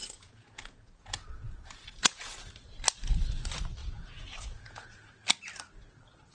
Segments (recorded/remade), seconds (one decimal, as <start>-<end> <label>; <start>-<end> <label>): 0.0-2.4 remade; 2.4-3.8 recorded; 3.8-5.2 remade; 5.2-6.3 recorded